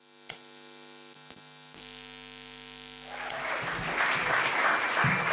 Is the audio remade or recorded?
recorded